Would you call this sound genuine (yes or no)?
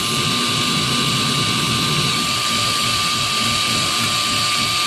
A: yes